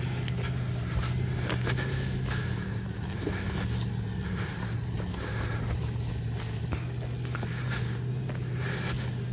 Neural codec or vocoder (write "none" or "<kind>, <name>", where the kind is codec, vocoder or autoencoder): none